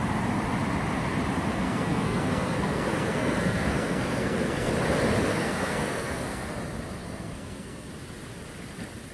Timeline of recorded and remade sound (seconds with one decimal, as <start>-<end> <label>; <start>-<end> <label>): 0.0-1.5 recorded; 1.5-4.7 remade; 4.7-5.3 recorded; 5.3-6.6 remade; 6.6-7.0 recorded; 7.0-7.9 remade; 7.9-9.1 recorded